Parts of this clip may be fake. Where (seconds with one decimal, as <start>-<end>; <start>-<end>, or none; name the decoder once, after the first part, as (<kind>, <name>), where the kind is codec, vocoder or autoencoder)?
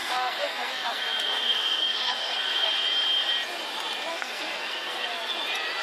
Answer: 0.0-2.7 (codec, SNAC); 4.1-5.3